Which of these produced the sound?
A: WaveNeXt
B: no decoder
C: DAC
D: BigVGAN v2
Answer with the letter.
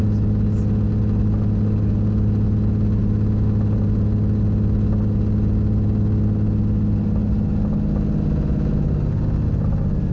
B